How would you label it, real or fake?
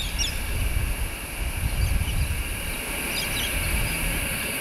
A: real